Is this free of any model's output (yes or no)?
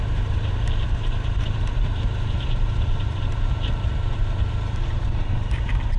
no